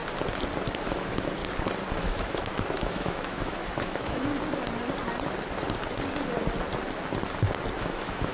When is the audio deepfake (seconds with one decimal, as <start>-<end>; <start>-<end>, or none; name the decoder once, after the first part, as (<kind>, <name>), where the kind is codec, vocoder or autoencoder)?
0.8-1.4 (autoencoder, DAC-VAE); 2.0-4.3; 7.8-8.3